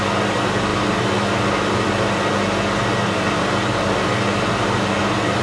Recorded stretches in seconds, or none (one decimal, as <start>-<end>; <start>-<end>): 0.0-5.4